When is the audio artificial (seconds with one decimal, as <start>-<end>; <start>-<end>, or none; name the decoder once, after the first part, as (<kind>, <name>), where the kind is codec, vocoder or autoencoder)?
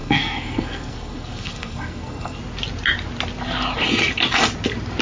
0.0-2.4 (codec, SNAC)